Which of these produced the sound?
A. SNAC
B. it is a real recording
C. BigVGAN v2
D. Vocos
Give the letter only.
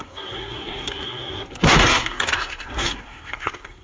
A